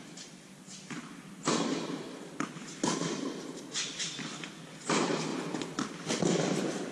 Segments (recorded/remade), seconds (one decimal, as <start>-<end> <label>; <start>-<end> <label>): 0.0-6.9 recorded